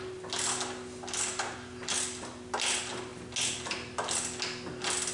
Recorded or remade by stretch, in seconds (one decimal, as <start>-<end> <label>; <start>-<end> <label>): 0.0-5.1 recorded